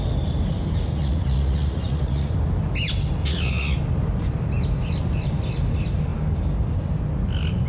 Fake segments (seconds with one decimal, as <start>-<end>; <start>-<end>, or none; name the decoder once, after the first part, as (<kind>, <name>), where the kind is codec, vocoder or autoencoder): 0.9-2.3 (vocoder, Vocos); 3.2-3.8